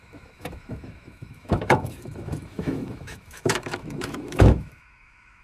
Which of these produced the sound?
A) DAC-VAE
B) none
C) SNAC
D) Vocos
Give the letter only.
A